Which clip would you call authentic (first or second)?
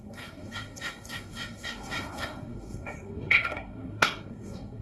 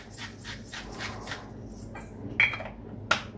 second